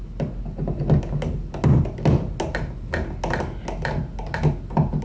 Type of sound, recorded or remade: recorded